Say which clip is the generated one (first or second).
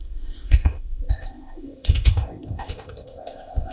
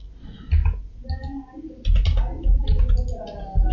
first